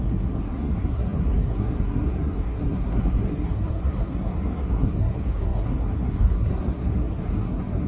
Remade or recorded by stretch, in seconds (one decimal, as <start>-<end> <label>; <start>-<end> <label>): 0.0-7.9 remade